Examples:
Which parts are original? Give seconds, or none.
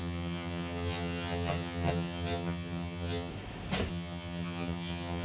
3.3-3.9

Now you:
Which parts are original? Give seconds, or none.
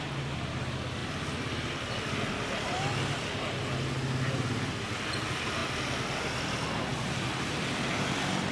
0.0-8.5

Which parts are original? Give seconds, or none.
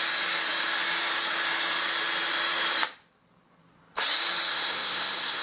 0.0-4.5